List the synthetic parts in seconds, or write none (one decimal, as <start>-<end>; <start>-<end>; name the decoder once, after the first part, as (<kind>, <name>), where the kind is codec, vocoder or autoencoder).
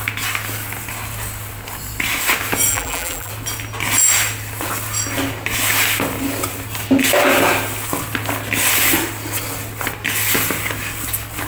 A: 2.7-3.3 (vocoder, BigVGAN v2)